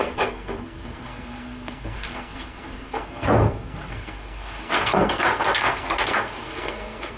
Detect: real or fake fake